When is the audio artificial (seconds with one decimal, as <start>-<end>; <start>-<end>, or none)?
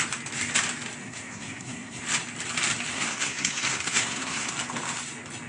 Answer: 1.0-2.0; 2.9-4.5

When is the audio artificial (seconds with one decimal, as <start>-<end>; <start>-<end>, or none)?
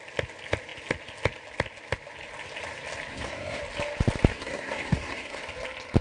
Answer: 3.1-3.6; 4.3-5.4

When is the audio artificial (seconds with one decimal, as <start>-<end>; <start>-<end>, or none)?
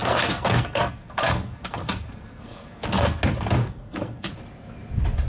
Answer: 0.0-3.2; 3.6-4.3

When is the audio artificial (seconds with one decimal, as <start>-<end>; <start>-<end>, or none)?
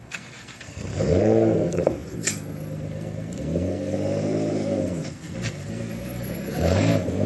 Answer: 0.0-7.3